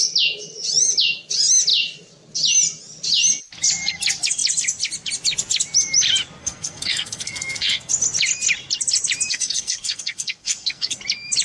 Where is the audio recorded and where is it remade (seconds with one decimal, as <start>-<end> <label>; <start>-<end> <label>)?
0.0-6.4 recorded; 6.4-7.9 remade; 7.9-9.3 recorded; 9.3-11.0 remade; 11.0-11.4 recorded